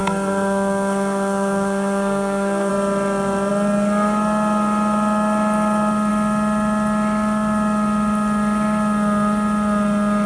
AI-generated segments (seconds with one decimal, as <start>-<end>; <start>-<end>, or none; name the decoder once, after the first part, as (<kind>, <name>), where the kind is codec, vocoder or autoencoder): 0.0-2.7 (codec, SNAC)